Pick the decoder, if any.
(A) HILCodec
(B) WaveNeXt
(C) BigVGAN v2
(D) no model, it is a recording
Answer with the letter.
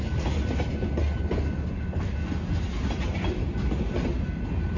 D